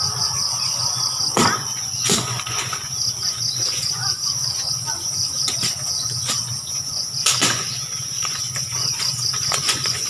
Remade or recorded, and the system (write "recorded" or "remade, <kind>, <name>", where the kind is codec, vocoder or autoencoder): remade, vocoder, Vocos